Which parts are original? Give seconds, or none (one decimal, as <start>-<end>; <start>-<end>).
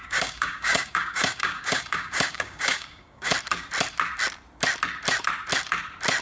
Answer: 3.3-6.2